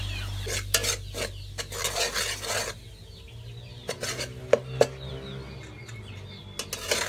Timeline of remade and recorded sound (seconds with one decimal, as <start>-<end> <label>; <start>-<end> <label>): 0.0-7.1 recorded